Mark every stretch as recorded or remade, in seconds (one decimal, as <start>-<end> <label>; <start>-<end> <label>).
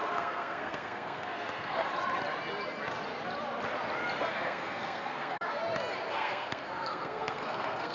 0.0-1.9 remade; 1.9-4.3 recorded; 4.3-5.6 remade; 5.6-6.1 recorded; 6.1-7.9 remade